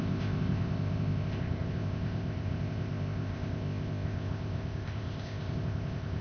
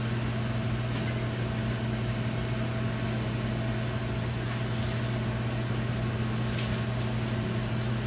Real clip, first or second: second